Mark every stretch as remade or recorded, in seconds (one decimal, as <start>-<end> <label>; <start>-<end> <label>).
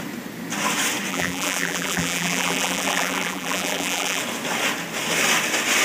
0.0-1.1 recorded; 1.1-4.2 remade; 4.2-5.8 recorded